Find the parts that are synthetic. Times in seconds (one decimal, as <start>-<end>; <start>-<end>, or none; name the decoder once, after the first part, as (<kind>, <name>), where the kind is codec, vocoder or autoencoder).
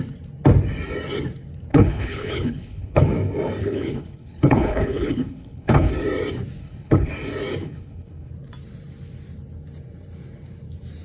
1.7-3.0 (codec, HILCodec); 3.6-5.9; 6.6-7.1; 7.6-8.3